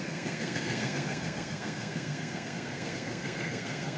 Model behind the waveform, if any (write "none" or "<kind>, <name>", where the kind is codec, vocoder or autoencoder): codec, SNAC